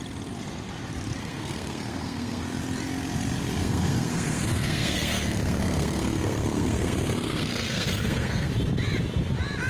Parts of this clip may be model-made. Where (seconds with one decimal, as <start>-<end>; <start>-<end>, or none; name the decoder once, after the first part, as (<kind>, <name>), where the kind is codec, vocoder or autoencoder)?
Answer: 1.2-2.4 (codec, SNAC); 3.6-8.5